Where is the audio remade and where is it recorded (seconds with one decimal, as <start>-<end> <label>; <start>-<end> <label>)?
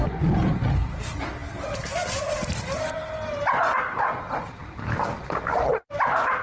0.0-6.4 recorded